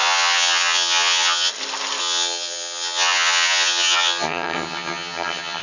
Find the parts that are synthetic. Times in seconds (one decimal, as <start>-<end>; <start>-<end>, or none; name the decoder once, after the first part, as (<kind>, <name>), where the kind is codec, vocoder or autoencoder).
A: 0.0-1.5 (vocoder, HiFi-GAN); 2.0-5.6